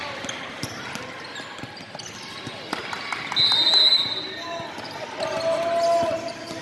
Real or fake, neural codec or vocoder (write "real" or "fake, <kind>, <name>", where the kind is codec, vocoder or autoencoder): real